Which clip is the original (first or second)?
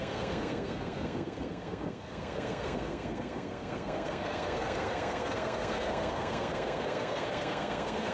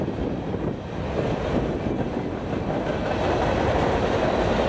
second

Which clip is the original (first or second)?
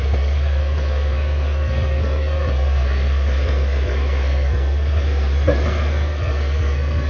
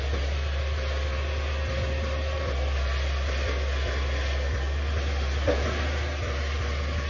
second